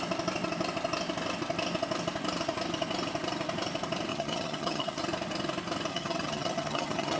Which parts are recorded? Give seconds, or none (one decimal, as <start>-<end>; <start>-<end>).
0.0-4.1; 5.0-5.9